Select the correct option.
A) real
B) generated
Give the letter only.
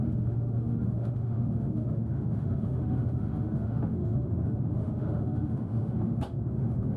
B